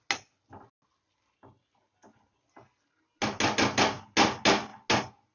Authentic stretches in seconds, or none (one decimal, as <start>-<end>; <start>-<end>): 0.0-5.3